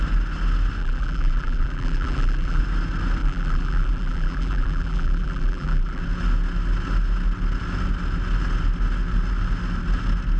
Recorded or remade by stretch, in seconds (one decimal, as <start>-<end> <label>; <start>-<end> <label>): 0.0-0.8 recorded; 0.8-2.6 remade; 2.6-3.2 recorded; 3.2-6.0 remade; 6.0-10.4 recorded

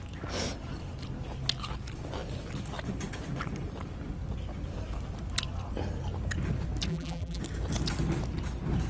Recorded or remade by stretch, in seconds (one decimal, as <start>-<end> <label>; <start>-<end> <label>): 0.0-6.9 recorded; 6.9-7.4 remade; 7.4-8.9 recorded